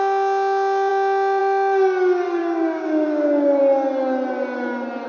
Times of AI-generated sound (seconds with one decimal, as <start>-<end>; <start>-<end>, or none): 2.4-3.6